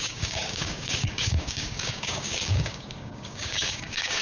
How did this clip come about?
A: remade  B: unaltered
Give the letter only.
A